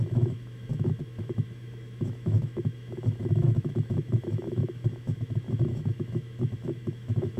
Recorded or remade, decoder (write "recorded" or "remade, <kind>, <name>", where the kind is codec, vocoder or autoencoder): remade, autoencoder, DAC-VAE